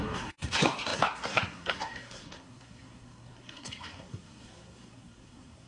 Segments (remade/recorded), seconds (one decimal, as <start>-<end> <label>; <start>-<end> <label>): 0.0-5.7 remade